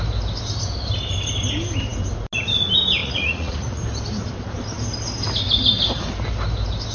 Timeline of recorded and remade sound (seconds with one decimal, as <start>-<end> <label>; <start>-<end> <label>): 0.0-3.0 recorded; 3.0-3.8 remade; 3.8-6.9 recorded